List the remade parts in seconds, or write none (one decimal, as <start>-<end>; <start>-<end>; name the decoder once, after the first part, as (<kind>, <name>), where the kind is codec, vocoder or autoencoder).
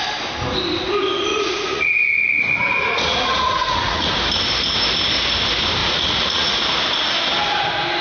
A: 1.3-4.1 (vocoder, Vocos); 5.8-6.6